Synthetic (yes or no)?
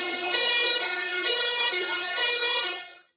yes